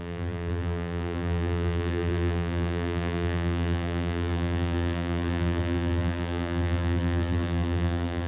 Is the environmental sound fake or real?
fake